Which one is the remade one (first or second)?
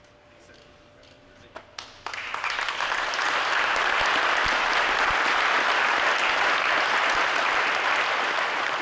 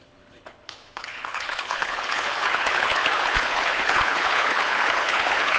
second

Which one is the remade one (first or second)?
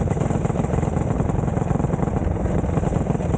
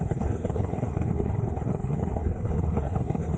second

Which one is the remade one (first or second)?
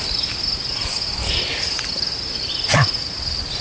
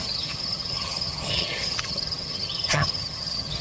second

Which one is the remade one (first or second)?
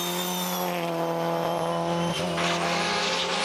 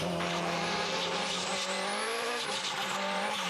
second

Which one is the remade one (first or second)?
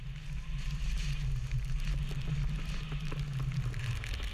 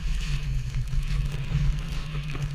second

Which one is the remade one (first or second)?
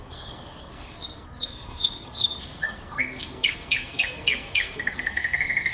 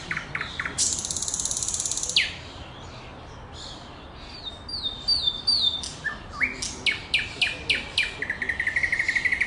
first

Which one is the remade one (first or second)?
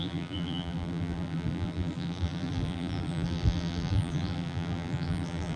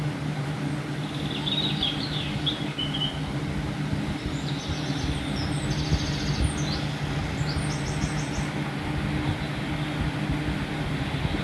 first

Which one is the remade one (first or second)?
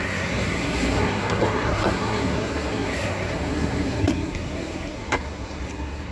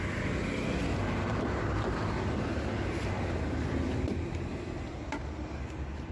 first